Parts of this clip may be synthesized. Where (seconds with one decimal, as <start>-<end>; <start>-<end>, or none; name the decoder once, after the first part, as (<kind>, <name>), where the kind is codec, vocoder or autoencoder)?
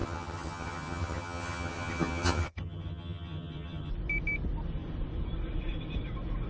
0.0-3.9 (vocoder, HiFi-GAN)